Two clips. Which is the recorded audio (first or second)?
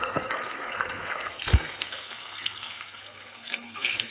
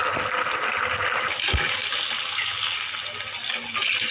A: second